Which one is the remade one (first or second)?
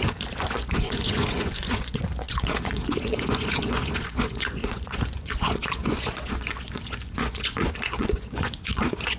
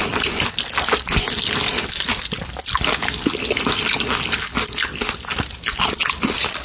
first